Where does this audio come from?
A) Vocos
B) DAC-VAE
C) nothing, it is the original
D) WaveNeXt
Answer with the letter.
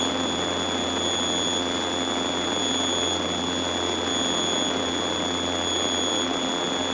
C